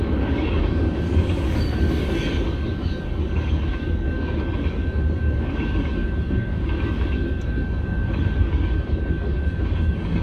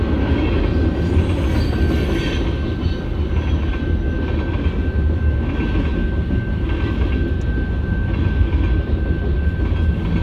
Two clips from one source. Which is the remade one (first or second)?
first